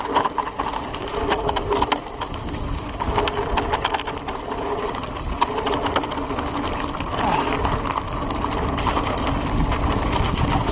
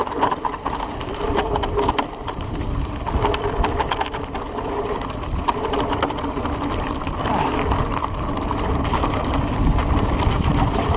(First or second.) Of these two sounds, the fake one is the second